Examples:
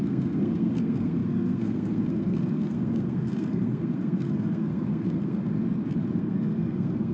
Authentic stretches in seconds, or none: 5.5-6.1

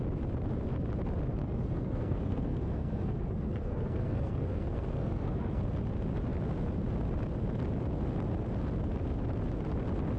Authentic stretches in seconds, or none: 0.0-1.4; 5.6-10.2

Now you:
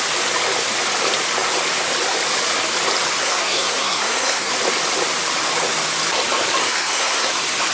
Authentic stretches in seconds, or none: 0.0-3.2; 4.5-6.6; 7.3-7.7

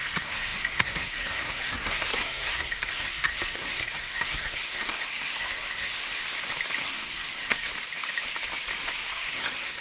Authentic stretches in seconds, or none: 6.2-6.8; 7.7-9.1